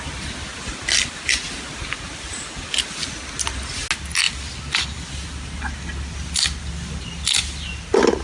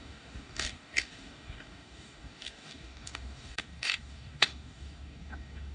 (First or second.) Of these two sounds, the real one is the first